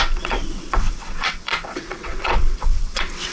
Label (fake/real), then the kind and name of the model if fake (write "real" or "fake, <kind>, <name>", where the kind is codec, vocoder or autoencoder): fake, vocoder, WaveNeXt